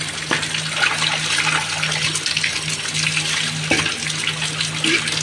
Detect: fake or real real